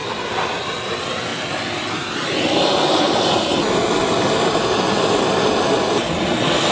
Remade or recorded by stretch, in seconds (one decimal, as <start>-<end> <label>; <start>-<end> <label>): 0.0-6.7 recorded